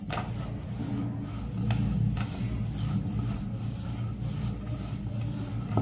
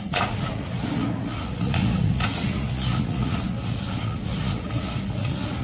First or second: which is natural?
first